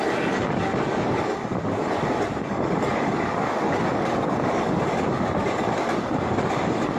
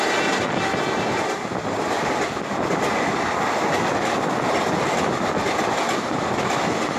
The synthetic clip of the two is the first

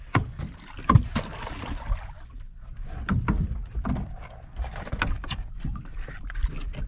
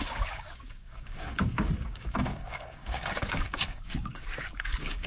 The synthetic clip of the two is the second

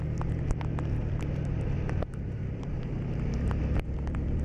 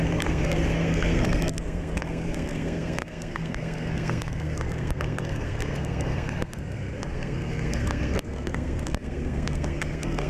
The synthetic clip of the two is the second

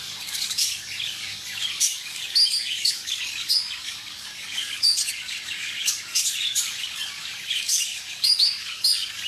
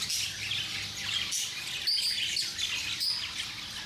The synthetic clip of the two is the first